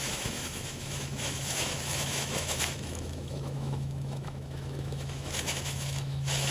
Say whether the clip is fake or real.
fake